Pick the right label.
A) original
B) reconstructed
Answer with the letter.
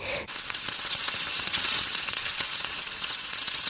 B